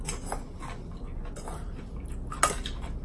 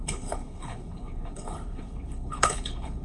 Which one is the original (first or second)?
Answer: first